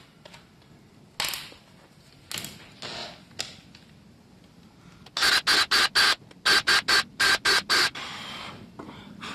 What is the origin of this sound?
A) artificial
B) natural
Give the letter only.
B